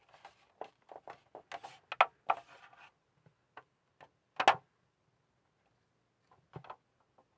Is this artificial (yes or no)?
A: no